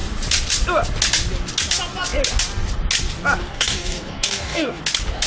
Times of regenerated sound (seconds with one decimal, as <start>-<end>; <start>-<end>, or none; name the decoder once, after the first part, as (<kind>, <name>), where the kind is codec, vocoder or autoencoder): 3.4-4.8 (codec, DAC)